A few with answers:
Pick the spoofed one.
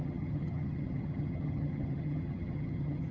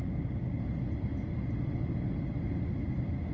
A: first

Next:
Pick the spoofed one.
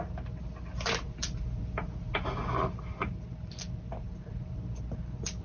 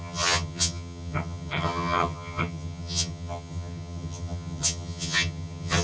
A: second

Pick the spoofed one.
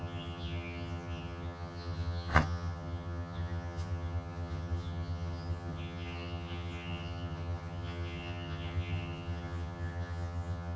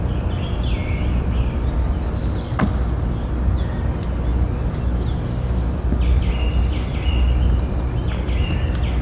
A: first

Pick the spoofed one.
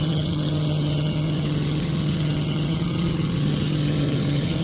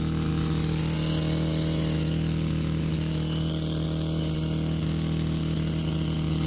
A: first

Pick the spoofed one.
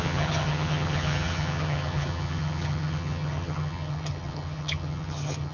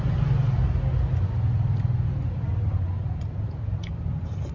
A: first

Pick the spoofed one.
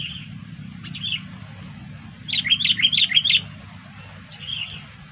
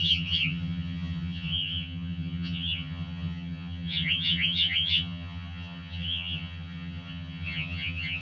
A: second